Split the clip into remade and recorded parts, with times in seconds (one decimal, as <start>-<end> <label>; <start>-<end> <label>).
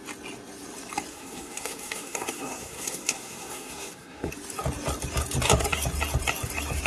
0.0-1.1 recorded; 1.1-4.3 remade; 4.3-6.9 recorded